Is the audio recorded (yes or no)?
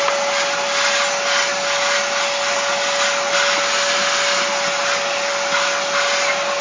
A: yes